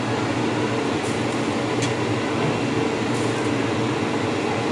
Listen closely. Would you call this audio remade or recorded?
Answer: recorded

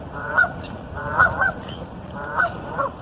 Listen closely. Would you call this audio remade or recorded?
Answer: remade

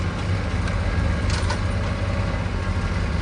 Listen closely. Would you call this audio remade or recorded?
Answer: recorded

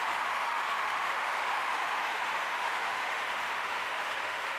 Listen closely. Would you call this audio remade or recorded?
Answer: remade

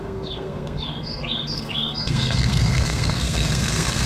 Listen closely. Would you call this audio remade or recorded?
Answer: remade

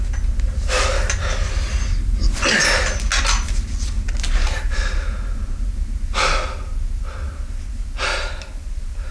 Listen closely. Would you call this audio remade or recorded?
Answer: recorded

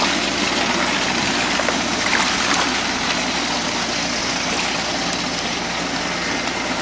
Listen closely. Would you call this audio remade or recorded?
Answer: recorded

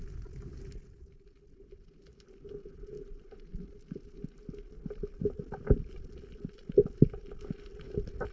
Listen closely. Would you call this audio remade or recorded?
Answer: recorded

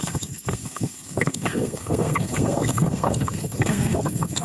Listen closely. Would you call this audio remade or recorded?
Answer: remade